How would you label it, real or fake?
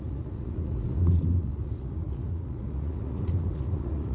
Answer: fake